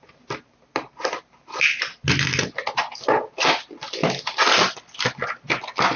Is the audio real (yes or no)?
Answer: yes